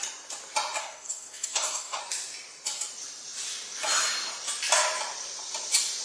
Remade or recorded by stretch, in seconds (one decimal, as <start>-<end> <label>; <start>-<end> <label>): 0.0-0.8 recorded; 0.8-2.0 remade; 2.0-6.0 recorded